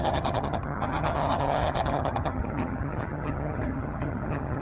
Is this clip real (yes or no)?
no